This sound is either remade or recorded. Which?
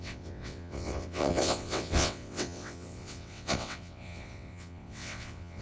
remade